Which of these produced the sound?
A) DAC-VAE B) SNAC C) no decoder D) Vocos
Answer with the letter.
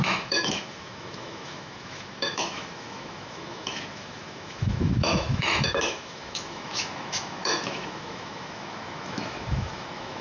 A